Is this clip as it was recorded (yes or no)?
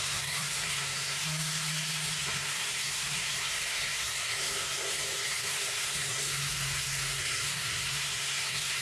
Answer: no